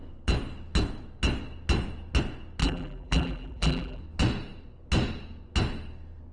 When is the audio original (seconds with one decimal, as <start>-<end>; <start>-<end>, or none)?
0.0-2.6; 4.0-6.3